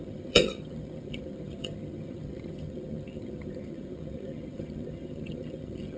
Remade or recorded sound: remade